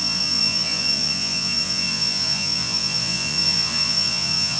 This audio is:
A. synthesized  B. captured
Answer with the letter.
A